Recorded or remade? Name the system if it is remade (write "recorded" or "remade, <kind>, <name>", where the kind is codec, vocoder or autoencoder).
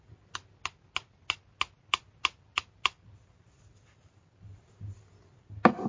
recorded